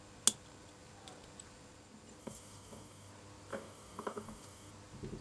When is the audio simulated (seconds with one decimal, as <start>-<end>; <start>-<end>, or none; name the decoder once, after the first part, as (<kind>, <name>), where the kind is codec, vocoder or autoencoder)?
2.2-3.1 (codec, DAC); 3.5-4.7